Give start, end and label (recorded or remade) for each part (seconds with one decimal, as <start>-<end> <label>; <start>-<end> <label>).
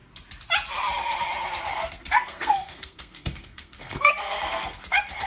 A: 0.0-1.7 recorded; 1.7-5.3 remade